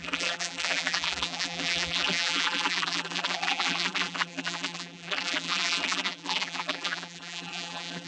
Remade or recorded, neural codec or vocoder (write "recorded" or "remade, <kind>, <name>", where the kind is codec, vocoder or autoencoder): remade, vocoder, BigVGAN v2